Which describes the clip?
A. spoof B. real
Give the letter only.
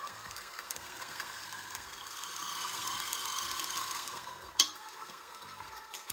A